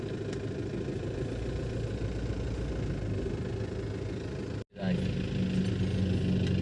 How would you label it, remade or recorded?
recorded